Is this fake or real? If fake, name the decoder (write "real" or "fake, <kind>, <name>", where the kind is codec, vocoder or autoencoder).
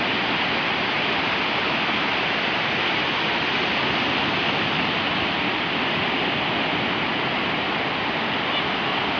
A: real